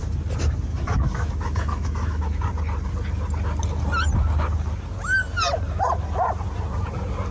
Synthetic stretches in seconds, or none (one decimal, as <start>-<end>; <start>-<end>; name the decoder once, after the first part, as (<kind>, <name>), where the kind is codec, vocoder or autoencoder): 0.7-2.4 (autoencoder, DAC-VAE)